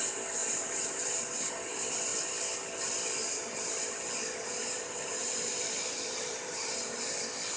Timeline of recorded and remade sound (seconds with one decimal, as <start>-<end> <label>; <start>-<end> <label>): 0.0-0.4 recorded; 0.4-1.5 remade; 1.5-3.2 recorded; 3.2-7.1 remade; 7.1-7.6 recorded